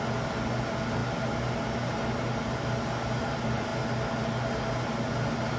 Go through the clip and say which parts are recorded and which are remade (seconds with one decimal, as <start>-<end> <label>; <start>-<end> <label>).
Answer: 0.0-5.6 recorded